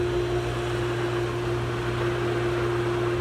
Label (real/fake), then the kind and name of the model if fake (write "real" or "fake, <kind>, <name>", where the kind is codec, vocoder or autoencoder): real